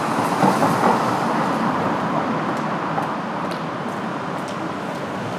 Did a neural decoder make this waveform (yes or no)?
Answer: no